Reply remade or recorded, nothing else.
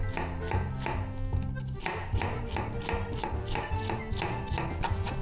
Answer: recorded